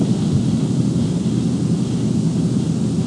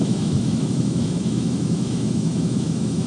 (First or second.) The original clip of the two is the first